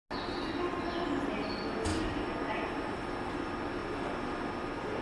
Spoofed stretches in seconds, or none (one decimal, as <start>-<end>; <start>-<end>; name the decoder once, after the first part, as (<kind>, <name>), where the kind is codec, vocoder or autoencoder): 1.9-3.1 (vocoder, BigVGAN v2)